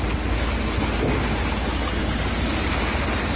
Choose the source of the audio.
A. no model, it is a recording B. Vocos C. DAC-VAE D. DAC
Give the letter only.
A